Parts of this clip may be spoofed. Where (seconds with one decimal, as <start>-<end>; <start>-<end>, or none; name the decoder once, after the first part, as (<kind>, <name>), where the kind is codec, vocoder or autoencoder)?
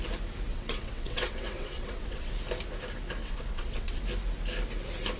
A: 0.5-2.3 (vocoder, WaveNeXt); 3.2-4.0